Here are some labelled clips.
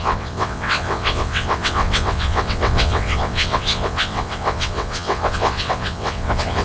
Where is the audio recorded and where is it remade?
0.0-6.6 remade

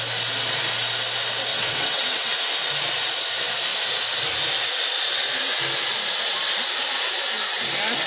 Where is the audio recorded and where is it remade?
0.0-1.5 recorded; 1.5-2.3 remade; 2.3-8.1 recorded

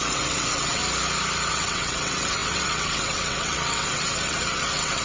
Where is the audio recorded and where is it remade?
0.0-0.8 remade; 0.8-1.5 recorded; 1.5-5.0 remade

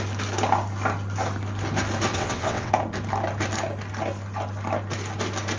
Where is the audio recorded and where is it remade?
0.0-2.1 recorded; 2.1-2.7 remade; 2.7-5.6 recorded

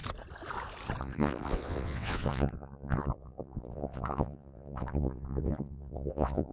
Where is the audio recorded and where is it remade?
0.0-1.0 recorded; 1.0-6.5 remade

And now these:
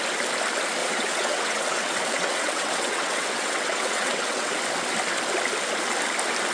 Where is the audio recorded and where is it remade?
0.0-0.8 recorded; 0.8-4.5 remade; 4.5-6.5 recorded

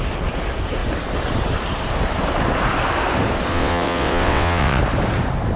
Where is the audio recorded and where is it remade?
0.0-3.5 recorded; 3.5-4.8 remade; 4.8-5.6 recorded

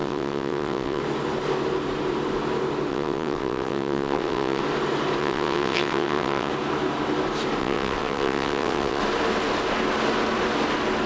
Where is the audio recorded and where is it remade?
0.0-1.0 remade; 1.0-2.9 recorded; 2.9-4.6 remade; 4.6-5.2 recorded; 5.2-6.5 remade; 6.5-7.6 recorded; 7.6-9.0 remade; 9.0-11.1 recorded